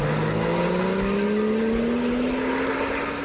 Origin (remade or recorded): recorded